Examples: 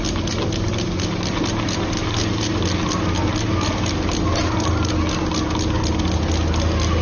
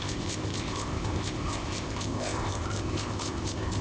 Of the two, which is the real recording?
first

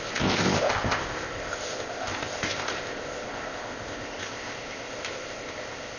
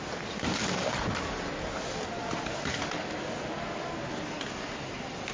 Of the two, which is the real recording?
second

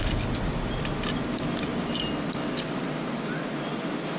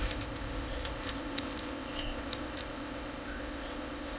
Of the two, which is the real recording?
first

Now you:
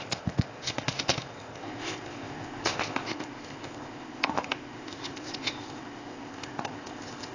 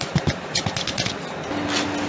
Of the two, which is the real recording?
second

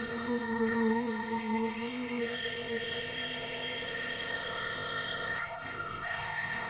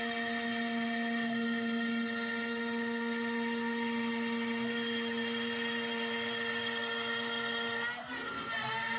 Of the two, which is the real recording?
second